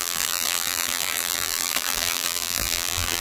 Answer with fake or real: fake